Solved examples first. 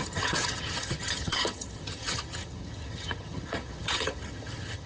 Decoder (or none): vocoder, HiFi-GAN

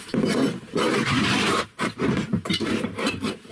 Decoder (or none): vocoder, BigVGAN v2